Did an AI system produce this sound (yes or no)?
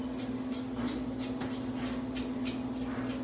no